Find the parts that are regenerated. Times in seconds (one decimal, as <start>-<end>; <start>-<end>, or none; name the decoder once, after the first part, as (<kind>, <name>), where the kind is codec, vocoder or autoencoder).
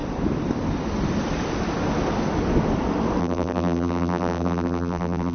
3.2-5.3 (vocoder, BigVGAN v2)